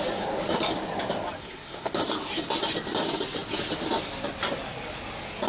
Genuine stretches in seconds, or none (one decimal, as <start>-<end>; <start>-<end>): 0.0-1.4; 1.9-5.5